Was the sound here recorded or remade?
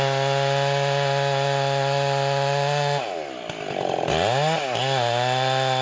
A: recorded